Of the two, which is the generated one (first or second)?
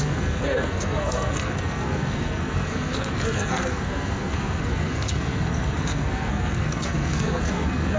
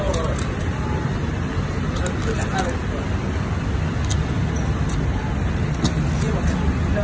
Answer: first